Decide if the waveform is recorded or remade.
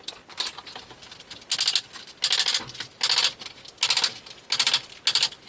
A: recorded